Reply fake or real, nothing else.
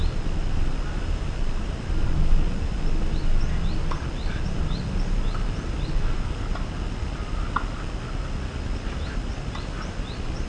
real